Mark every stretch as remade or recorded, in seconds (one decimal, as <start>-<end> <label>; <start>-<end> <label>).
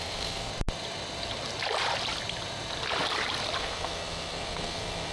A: 0.0-0.5 remade; 0.5-3.6 recorded; 3.6-5.1 remade